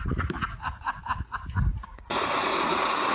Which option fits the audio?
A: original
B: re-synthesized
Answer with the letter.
B